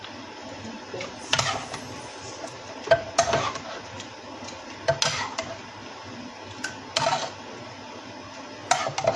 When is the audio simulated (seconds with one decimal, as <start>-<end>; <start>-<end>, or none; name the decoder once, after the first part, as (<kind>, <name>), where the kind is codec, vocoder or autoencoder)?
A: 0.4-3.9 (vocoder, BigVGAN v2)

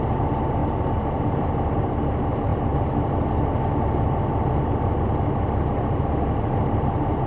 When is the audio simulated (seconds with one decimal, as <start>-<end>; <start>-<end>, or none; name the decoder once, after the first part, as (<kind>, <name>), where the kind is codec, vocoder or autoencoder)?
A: 0.6-1.9 (vocoder, BigVGAN v2)

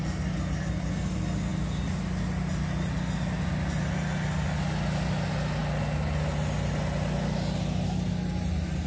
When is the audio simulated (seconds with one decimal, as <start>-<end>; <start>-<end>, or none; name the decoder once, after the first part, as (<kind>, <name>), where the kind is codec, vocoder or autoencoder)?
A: none

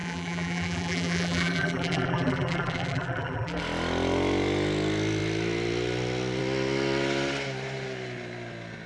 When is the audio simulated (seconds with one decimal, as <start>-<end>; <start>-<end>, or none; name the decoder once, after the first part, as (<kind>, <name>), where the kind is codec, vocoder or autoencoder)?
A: 0.0-3.6 (vocoder, BigVGAN v2)

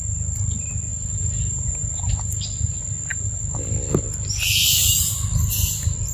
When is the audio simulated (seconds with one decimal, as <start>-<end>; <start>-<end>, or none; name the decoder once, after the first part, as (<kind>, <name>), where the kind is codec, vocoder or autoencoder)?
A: 0.9-2.1 (vocoder, BigVGAN v2)

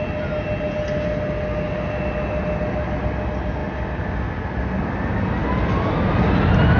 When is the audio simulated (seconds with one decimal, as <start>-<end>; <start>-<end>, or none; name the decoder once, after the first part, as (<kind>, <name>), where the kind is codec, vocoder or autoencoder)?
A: none

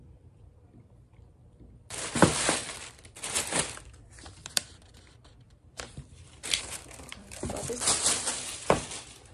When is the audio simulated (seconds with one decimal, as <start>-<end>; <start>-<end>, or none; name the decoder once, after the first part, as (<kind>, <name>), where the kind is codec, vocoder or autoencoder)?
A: 0.0-2.6 (vocoder, BigVGAN v2); 3.3-9.3

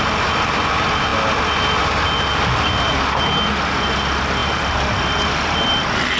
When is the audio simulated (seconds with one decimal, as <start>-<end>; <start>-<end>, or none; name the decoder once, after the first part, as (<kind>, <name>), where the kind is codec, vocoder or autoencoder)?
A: none